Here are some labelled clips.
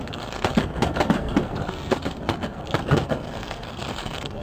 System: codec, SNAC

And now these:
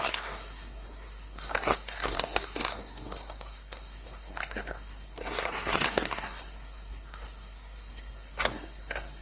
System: codec, SNAC